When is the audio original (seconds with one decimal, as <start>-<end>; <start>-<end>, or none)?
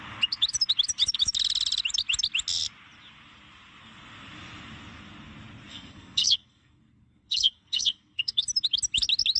0.0-5.7; 8.4-9.4